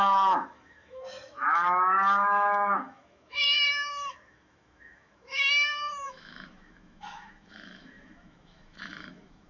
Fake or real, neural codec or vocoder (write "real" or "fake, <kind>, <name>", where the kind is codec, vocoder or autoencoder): fake, autoencoder, DAC-VAE